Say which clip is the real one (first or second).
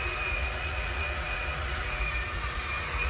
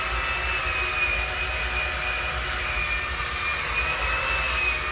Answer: second